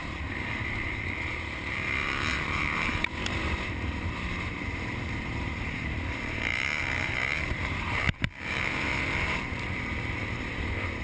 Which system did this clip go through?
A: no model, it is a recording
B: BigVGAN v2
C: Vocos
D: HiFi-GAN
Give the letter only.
B